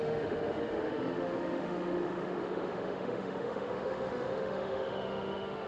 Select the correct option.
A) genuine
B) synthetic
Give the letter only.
B